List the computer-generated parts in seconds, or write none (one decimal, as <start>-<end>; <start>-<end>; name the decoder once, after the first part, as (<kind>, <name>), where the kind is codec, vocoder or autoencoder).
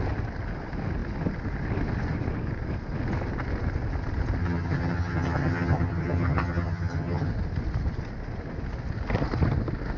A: 4.4-7.3 (vocoder, HiFi-GAN)